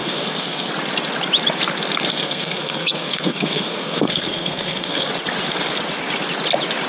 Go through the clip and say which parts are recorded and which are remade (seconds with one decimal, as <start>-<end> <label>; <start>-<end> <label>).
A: 0.0-0.7 remade; 0.7-2.1 recorded; 2.1-5.1 remade; 5.1-6.9 recorded